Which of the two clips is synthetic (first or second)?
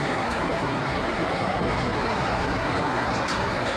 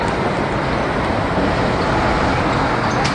first